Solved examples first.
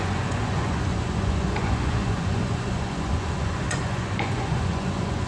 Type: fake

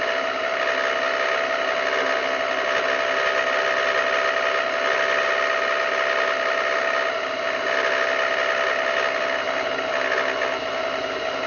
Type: real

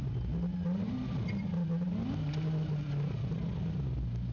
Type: real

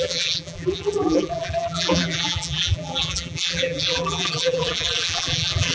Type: fake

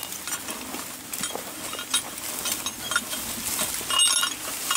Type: real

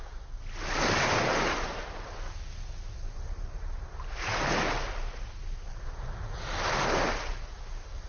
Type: real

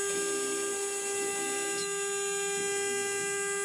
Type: real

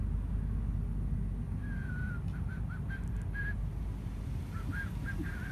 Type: real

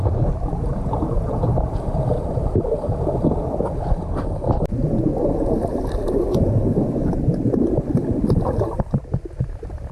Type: real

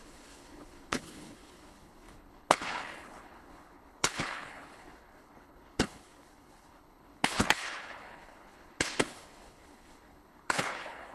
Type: fake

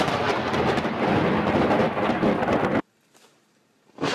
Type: real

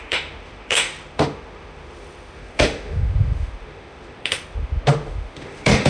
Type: fake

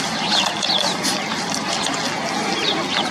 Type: real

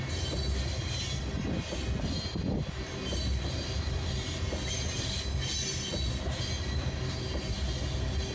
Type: real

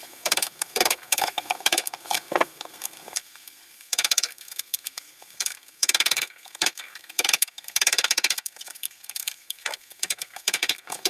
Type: fake